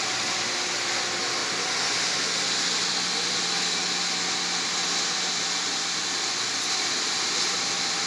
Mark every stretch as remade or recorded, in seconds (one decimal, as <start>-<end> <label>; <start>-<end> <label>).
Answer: 0.0-8.1 recorded